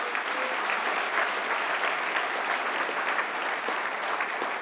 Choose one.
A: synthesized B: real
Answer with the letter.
B